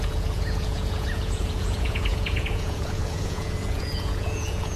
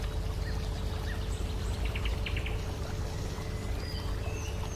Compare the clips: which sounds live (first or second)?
second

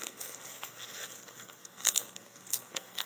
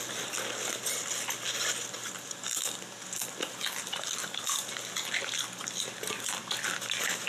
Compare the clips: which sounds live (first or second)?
second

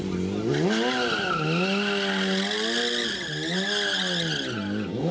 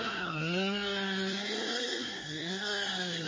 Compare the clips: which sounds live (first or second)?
first